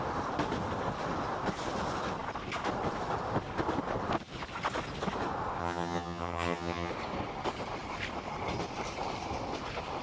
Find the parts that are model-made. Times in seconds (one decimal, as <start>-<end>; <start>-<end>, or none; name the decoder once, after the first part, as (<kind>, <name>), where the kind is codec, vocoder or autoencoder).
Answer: 5.6-6.9 (vocoder, HiFi-GAN)